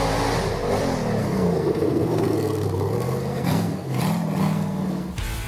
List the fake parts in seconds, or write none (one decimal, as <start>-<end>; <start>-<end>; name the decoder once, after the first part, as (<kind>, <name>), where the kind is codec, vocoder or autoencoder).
1.2-4.0 (codec, SNAC); 4.4-5.1